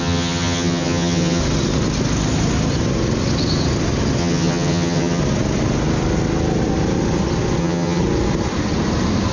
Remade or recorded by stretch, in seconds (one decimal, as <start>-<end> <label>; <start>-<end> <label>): 0.0-1.4 remade; 1.4-4.2 recorded; 4.2-5.2 remade; 5.2-7.6 recorded; 7.6-8.0 remade; 8.0-9.3 recorded